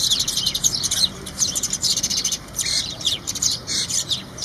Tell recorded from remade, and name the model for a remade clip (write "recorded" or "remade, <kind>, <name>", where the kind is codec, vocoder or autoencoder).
remade, vocoder, BigVGAN v2